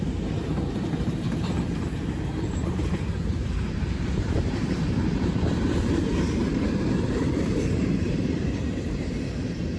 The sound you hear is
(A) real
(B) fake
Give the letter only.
B